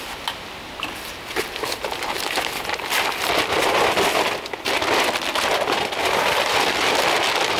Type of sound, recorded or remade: recorded